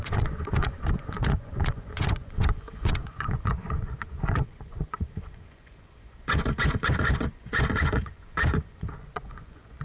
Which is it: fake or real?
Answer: fake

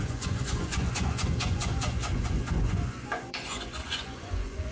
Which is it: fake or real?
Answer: fake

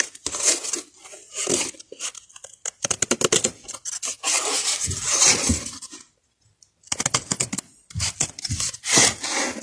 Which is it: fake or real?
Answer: real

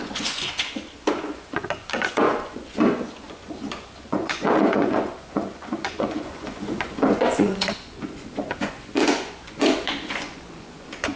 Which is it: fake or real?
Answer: fake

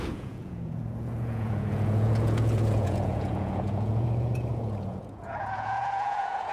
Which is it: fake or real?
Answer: fake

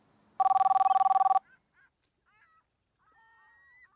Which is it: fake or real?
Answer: real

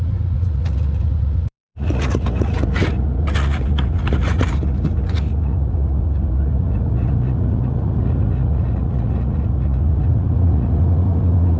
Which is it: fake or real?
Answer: fake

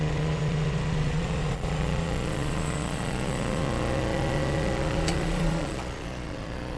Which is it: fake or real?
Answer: fake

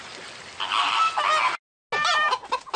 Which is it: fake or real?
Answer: real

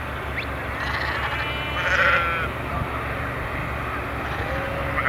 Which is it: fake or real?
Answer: real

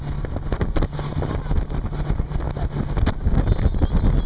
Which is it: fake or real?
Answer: real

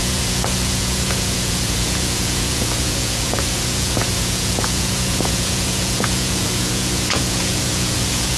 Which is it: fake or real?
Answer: fake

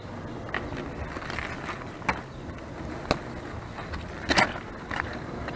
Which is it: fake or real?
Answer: real